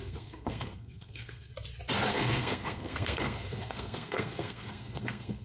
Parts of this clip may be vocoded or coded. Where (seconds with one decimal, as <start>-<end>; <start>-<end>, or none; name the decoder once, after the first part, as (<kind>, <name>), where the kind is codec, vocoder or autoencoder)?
0.0-1.5 (codec, SNAC); 2.1-5.4